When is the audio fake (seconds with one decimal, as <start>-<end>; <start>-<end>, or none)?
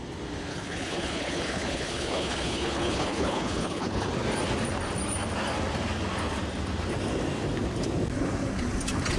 0.5-4.1